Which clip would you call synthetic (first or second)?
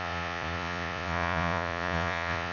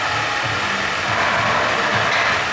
first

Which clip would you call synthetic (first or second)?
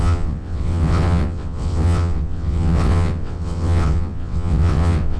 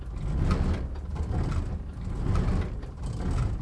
first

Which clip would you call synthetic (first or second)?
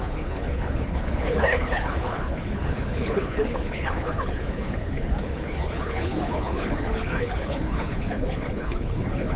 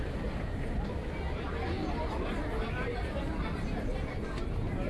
first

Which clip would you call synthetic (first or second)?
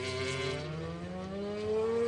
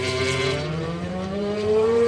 second